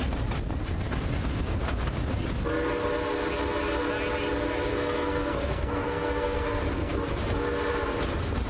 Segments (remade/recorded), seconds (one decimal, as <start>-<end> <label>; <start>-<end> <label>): 0.0-4.7 recorded; 4.7-6.9 remade; 6.9-8.5 recorded